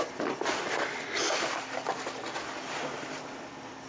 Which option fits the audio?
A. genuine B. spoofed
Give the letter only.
B